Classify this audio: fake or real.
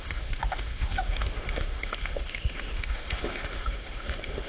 fake